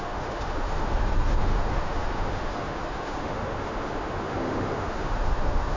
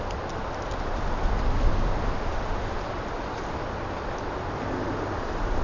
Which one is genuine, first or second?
second